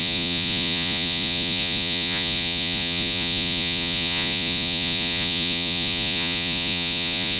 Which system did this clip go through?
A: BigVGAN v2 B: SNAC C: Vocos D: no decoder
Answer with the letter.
C